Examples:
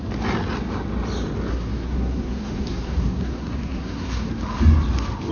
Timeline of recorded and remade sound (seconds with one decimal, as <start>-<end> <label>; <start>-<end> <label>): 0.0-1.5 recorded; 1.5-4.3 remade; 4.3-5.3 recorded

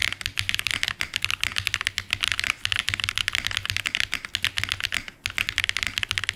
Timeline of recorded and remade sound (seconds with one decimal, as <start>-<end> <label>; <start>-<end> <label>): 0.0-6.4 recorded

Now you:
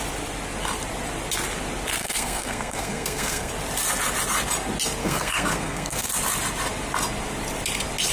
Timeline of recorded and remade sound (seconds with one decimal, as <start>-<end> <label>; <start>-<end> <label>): 0.0-2.0 recorded; 2.0-3.5 remade; 3.5-5.0 recorded; 5.0-6.1 remade; 6.1-8.1 recorded